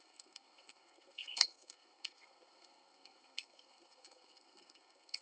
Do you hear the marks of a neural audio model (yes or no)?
yes